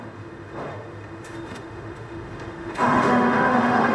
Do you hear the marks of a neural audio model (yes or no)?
yes